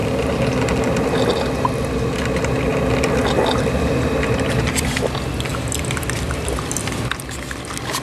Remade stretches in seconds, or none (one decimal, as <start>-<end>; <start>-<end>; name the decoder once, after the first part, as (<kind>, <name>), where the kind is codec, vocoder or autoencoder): none